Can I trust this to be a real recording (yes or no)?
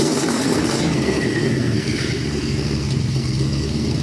no